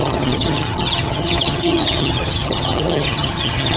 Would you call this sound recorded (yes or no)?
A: no